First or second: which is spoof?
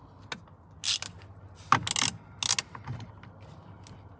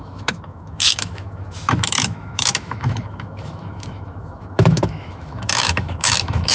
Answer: second